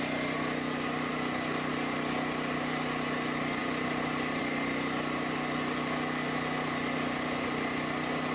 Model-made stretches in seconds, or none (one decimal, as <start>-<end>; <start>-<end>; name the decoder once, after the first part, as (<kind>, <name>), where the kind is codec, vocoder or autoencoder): 3.6-4.4 (vocoder, BigVGAN v2)